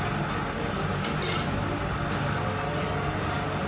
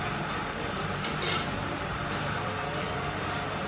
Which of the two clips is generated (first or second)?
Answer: second